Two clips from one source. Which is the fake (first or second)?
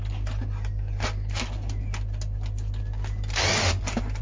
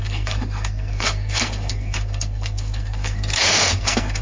second